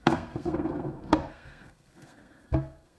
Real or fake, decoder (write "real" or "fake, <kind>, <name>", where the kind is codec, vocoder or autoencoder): fake, codec, SNAC